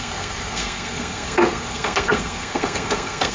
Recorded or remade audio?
remade